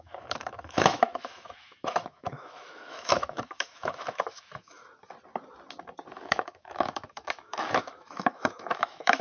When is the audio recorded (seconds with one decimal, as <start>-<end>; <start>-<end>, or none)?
4.8-6.2